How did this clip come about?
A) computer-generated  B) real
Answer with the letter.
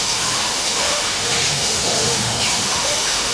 A